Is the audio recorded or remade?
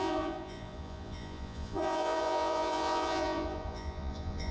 remade